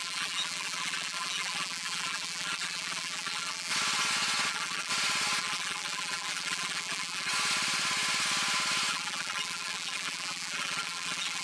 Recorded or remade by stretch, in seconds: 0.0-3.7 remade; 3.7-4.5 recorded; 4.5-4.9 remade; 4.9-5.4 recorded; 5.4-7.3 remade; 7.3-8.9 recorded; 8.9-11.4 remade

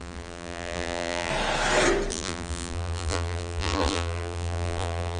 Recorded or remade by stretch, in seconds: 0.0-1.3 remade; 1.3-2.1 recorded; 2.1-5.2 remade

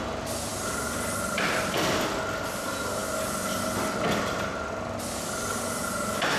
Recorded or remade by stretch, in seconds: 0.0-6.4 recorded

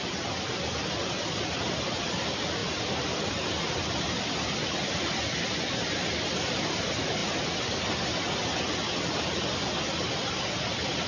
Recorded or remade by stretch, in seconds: 0.0-2.6 recorded; 2.6-5.1 remade; 5.1-11.1 recorded